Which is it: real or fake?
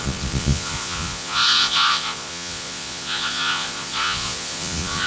fake